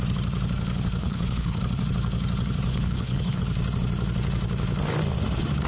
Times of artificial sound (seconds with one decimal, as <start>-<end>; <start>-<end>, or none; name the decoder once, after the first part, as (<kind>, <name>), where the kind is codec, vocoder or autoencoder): 1.0-1.6 (codec, HILCodec); 2.7-3.4